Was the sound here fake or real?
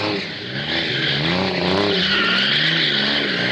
real